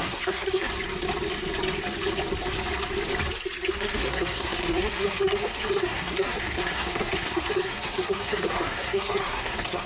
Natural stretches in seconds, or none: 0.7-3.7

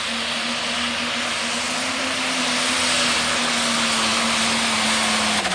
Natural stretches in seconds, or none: 0.0-5.5

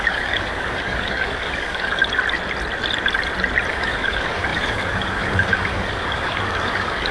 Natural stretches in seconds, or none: 2.0-3.7

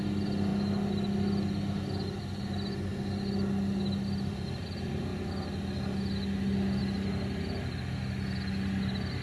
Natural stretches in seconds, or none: 0.0-9.2